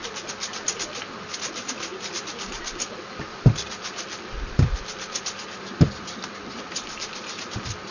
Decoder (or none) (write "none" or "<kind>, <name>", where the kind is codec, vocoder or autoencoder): none